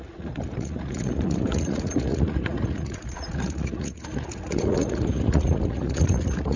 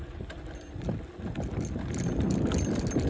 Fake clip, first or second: first